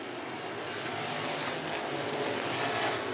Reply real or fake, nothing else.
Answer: real